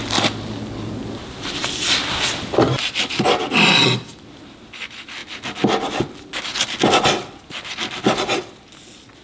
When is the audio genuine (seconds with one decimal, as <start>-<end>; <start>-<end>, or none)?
0.0-9.2